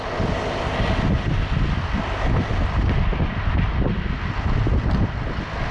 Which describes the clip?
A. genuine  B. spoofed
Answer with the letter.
A